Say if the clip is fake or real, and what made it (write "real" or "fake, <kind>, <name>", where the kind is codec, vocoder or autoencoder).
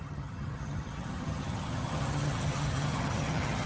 fake, vocoder, HiFi-GAN